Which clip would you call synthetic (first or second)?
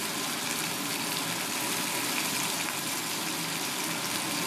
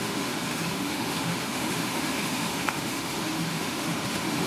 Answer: second